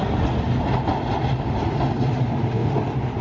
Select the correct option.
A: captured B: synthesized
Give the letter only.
A